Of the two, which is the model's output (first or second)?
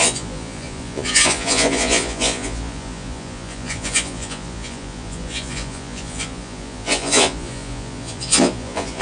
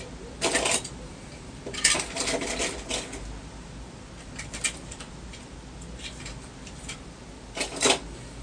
first